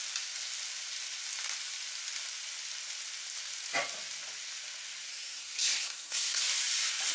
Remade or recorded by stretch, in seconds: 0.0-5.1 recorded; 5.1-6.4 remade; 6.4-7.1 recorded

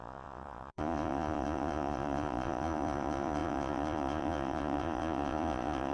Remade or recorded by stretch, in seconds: 0.0-5.9 remade